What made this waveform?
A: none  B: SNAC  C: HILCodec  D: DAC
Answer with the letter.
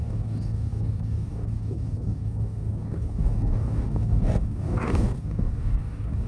D